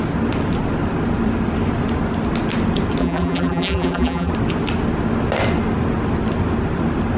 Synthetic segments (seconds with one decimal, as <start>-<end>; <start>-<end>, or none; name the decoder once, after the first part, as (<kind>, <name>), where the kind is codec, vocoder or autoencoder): 3.0-4.3 (vocoder, BigVGAN v2)